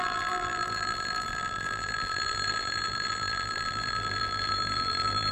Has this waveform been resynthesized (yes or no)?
yes